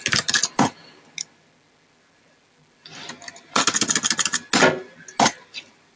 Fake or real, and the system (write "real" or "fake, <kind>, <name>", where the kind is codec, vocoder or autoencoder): real